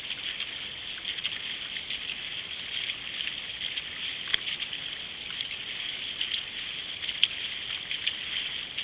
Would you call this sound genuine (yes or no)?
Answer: yes